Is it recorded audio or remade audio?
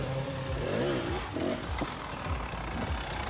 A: recorded